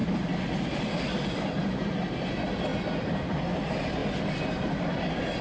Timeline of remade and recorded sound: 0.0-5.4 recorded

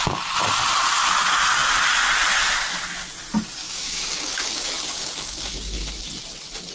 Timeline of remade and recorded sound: 0.0-3.6 recorded; 3.6-5.9 remade; 5.9-6.7 recorded

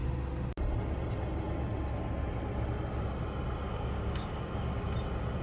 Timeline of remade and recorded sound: 0.0-3.6 recorded; 3.6-4.9 remade; 4.9-5.4 recorded

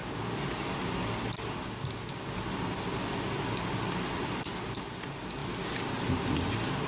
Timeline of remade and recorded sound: 0.0-6.9 recorded